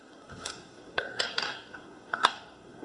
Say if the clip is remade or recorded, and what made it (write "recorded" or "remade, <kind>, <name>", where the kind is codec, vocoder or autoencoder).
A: remade, codec, SNAC